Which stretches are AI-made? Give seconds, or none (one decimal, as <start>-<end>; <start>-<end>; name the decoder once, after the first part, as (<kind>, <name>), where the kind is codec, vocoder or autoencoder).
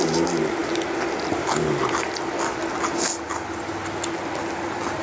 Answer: none